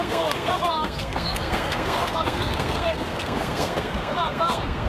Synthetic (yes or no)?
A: yes